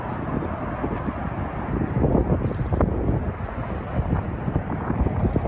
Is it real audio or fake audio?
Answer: real